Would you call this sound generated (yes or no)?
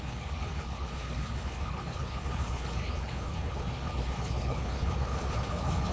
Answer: yes